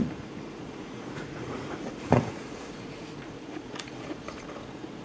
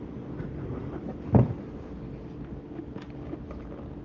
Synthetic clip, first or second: first